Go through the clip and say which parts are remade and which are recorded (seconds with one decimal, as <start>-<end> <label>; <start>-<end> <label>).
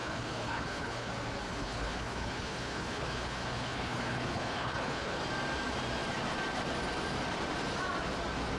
0.0-1.1 remade; 1.1-1.5 recorded; 1.5-5.2 remade; 5.2-8.6 recorded